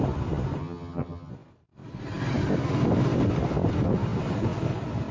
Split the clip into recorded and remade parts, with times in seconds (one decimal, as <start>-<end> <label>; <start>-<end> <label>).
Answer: 0.0-0.6 recorded; 0.6-1.3 remade; 1.3-5.1 recorded

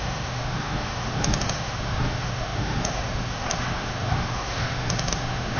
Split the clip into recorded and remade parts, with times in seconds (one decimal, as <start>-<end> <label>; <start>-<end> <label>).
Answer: 0.0-5.6 remade

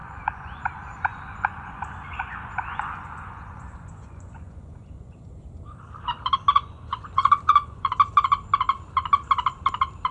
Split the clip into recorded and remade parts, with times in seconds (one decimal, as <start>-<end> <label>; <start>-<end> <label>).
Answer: 0.0-0.6 remade; 0.6-1.1 recorded; 1.1-5.4 remade; 5.4-6.5 recorded; 6.5-7.9 remade; 7.9-10.1 recorded

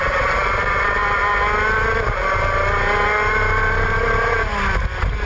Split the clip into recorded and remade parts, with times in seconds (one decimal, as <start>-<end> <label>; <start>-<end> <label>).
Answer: 0.0-1.0 remade; 1.0-3.3 recorded; 3.3-4.5 remade; 4.5-5.3 recorded

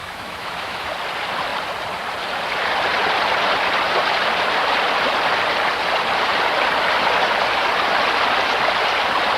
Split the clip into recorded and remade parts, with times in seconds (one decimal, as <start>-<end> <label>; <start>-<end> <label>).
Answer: 0.0-0.9 remade; 0.9-9.4 recorded

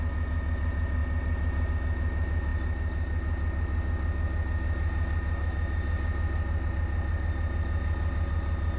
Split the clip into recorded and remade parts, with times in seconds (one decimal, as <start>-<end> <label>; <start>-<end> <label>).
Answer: 0.0-8.8 recorded